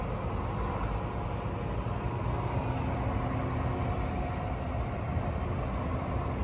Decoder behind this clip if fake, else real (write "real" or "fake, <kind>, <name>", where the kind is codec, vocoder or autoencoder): real